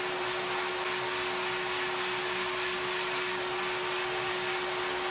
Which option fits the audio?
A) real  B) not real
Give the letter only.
A